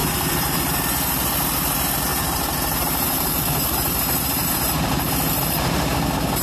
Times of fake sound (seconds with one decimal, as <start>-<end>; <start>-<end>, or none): 0.0-0.8; 2.1-5.1